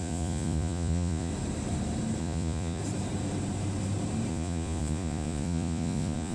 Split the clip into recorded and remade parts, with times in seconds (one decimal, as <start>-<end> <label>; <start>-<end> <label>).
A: 0.0-1.3 remade; 1.3-2.2 recorded; 2.2-2.8 remade; 2.8-4.3 recorded; 4.3-6.3 remade

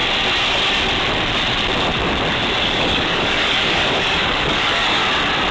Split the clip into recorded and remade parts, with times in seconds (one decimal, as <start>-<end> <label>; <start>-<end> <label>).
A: 0.0-2.6 recorded; 2.6-5.0 remade; 5.0-5.5 recorded

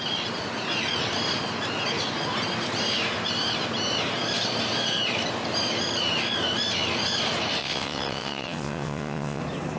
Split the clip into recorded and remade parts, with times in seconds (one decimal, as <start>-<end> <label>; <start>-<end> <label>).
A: 0.0-7.6 recorded; 7.6-9.4 remade; 9.4-9.8 recorded

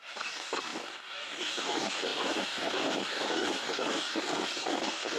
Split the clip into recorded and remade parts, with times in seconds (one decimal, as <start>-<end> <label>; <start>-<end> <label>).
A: 0.0-5.2 remade